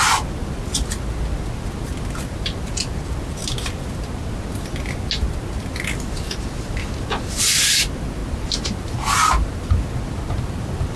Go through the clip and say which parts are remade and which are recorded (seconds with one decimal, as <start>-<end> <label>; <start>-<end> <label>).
0.0-11.0 recorded